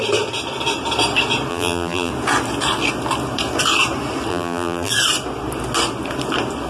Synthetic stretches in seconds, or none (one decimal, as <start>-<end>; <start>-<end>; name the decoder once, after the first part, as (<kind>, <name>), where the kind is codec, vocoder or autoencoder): 1.5-2.1 (vocoder, BigVGAN v2); 4.3-4.9